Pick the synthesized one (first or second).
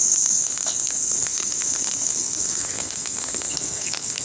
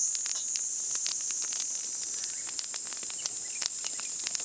first